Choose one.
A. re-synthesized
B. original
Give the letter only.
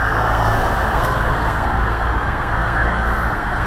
A